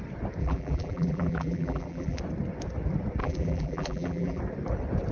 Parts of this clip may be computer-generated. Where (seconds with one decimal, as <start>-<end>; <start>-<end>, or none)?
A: 0.4-2.2; 3.2-4.4